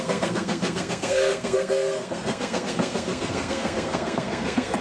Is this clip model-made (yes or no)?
yes